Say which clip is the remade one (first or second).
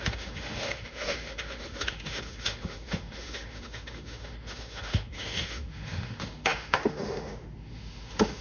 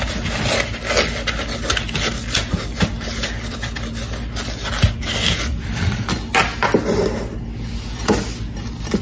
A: first